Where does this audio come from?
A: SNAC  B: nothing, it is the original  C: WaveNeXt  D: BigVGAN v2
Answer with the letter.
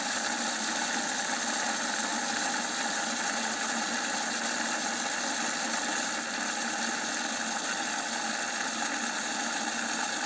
B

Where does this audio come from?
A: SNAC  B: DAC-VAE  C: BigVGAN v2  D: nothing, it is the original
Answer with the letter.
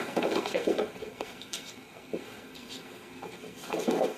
A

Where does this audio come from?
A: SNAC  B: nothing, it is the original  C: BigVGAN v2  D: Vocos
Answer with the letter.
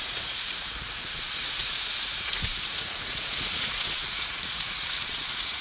D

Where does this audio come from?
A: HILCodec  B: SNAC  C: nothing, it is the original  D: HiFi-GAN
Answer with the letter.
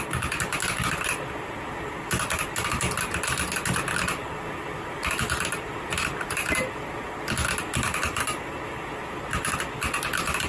C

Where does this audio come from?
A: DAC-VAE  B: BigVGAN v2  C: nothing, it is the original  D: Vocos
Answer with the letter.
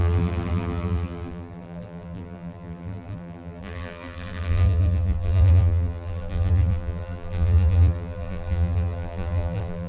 B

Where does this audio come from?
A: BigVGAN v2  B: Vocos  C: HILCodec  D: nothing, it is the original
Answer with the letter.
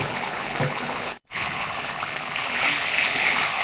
C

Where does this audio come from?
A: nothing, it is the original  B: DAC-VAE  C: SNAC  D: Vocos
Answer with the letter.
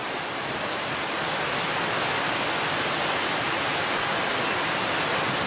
A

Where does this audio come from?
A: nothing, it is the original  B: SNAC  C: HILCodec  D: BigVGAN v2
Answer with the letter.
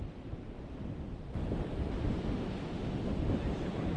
A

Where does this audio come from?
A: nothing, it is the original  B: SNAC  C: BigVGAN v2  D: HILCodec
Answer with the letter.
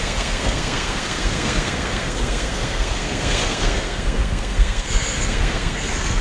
B